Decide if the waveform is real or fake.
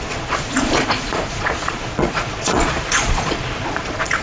fake